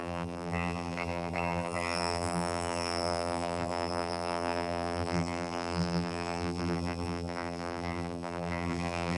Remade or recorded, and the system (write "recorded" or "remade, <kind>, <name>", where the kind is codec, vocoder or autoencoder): remade, vocoder, BigVGAN v2